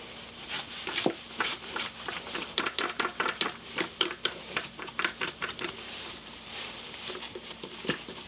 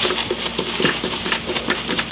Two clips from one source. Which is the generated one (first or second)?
first